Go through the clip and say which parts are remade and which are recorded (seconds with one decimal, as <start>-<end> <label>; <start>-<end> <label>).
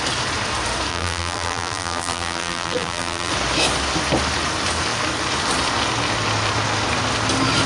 0.0-0.9 recorded; 0.9-3.3 remade; 3.3-7.7 recorded